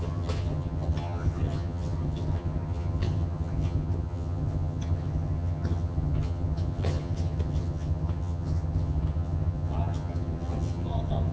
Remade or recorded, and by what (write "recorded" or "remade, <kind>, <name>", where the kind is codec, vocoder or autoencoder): remade, vocoder, HiFi-GAN